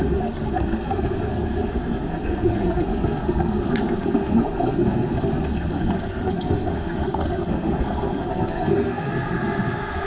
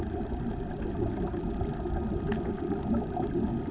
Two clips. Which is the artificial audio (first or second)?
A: first